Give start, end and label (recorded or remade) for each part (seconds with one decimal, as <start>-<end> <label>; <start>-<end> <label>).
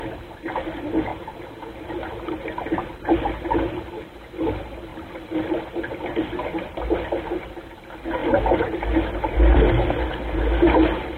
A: 0.0-4.9 recorded; 4.9-5.5 remade; 5.5-8.2 recorded; 8.2-9.7 remade; 9.7-11.2 recorded